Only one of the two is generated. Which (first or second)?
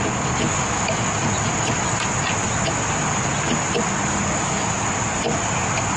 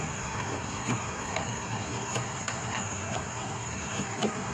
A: second